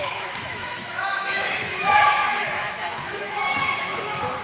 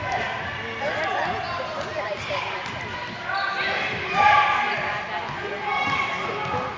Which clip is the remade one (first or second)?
first